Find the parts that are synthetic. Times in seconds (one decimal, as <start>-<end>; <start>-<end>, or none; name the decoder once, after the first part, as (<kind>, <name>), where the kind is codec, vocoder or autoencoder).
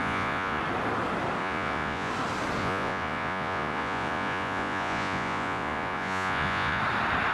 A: 0.0-0.6 (vocoder, Vocos); 1.4-2.1; 2.6-6.8